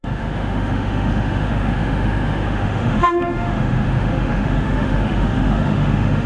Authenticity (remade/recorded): remade